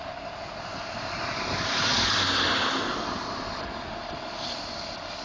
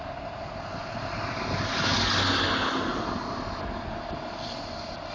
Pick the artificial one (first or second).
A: first